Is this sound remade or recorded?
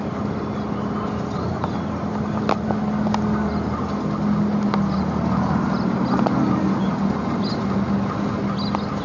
recorded